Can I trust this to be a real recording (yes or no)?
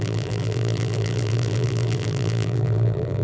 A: no